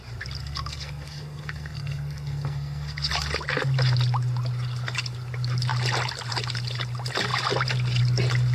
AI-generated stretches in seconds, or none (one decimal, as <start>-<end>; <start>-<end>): 0.4-3.1